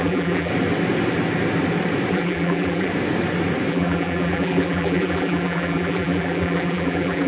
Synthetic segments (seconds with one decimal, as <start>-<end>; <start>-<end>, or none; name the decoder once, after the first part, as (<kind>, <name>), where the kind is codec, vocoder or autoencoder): 0.0-0.5 (vocoder, BigVGAN v2); 2.1-2.9; 3.7-7.3